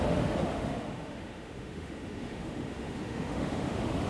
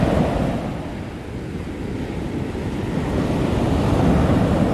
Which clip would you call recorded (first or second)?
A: second